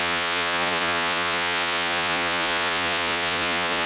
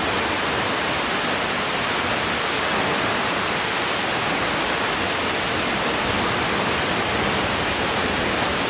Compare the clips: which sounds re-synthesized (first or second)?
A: first